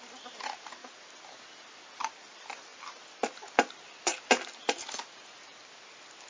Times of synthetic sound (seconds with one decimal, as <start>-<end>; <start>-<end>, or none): 0.0-2.7; 5.8-6.3